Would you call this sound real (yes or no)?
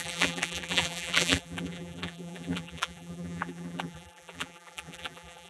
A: no